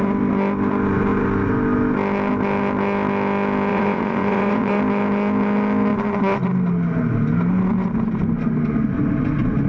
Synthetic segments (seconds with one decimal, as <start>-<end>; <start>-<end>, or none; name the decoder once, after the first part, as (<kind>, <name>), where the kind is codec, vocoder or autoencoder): 3.7-4.8 (vocoder, Vocos)